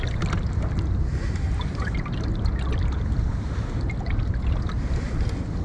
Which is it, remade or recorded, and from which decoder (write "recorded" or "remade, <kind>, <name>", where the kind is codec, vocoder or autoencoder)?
recorded